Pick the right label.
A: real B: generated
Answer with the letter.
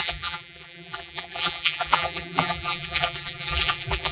B